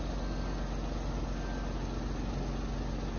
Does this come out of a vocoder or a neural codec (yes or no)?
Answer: no